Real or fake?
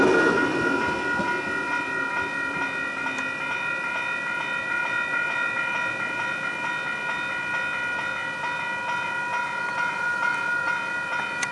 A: real